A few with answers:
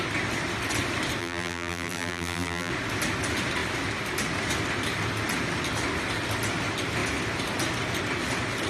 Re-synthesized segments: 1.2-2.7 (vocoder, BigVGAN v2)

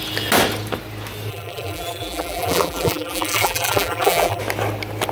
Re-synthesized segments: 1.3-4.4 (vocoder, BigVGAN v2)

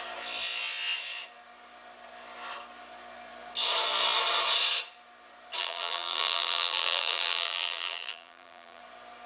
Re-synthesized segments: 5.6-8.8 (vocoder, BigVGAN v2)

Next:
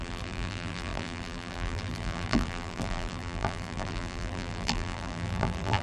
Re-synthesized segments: 0.0-5.8 (vocoder, BigVGAN v2)

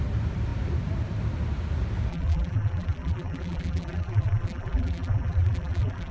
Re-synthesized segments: 2.1-6.1 (vocoder, BigVGAN v2)